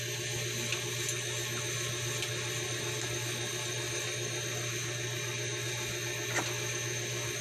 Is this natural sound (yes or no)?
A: yes